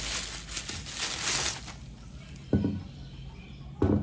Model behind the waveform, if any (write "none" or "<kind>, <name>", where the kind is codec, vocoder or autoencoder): none